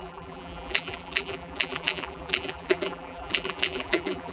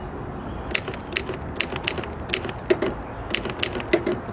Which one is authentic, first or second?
second